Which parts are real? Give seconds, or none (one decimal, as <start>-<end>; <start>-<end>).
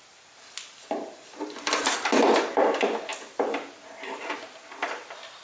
0.0-5.4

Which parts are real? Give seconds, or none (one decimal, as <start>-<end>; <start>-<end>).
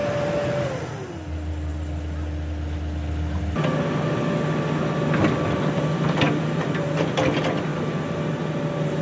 0.0-9.0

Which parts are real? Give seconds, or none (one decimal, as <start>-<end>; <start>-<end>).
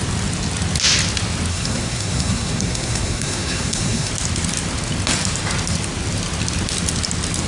0.0-1.5; 4.1-7.5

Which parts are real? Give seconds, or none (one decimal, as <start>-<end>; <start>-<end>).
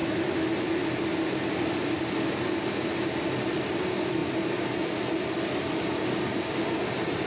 0.5-7.3